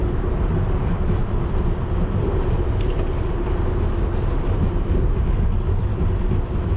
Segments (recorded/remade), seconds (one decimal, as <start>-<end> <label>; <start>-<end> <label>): 0.0-0.5 recorded; 0.5-1.2 remade; 1.2-5.3 recorded; 5.3-5.9 remade; 5.9-6.8 recorded